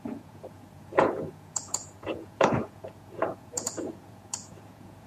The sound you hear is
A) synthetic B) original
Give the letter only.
A